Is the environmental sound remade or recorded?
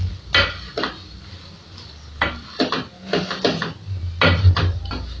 recorded